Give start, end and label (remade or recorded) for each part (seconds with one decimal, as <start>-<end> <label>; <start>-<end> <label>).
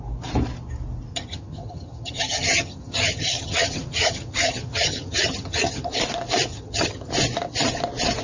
0.0-1.1 recorded; 1.1-6.0 remade; 6.0-6.5 recorded; 6.5-7.1 remade; 7.1-8.2 recorded